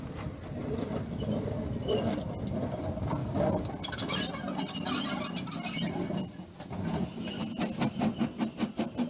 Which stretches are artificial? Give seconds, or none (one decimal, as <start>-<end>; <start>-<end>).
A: none